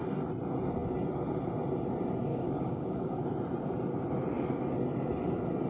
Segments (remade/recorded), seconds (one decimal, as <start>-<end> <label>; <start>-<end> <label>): 0.0-2.3 recorded; 2.3-3.2 remade; 3.2-5.7 recorded